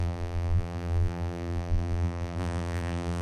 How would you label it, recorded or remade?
remade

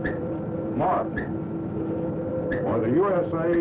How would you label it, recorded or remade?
recorded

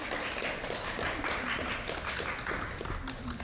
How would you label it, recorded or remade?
recorded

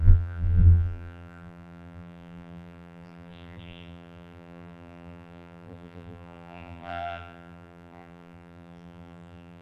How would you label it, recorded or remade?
remade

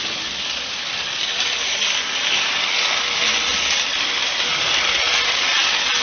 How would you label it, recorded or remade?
remade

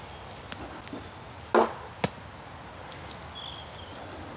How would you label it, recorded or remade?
recorded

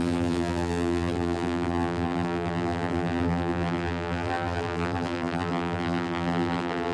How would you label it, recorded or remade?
remade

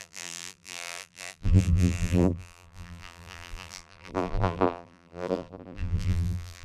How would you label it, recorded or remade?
remade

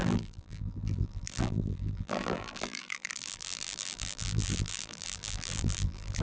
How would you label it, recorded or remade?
remade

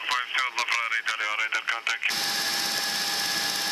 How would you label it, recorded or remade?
recorded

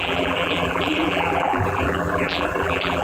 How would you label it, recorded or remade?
remade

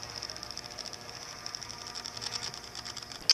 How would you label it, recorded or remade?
recorded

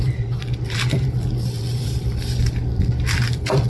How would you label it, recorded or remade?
remade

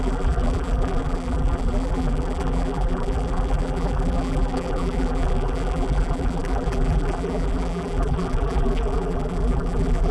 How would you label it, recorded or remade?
remade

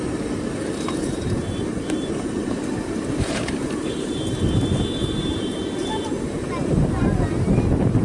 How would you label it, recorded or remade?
remade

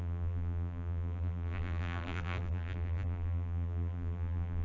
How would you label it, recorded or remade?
remade